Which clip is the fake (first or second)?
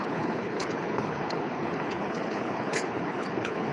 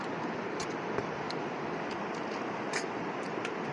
first